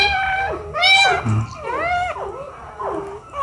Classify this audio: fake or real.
real